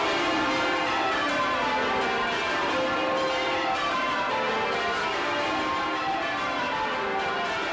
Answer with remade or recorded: remade